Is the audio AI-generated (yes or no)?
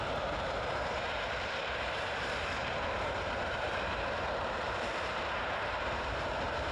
yes